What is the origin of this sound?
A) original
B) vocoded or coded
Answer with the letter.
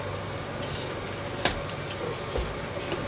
A